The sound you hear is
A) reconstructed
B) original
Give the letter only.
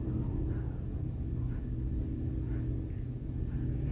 B